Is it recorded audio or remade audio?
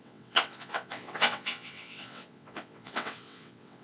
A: remade